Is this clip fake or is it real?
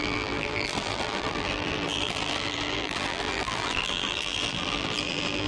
fake